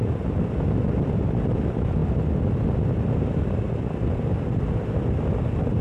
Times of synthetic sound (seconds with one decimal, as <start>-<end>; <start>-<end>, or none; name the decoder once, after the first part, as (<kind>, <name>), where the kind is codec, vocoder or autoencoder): none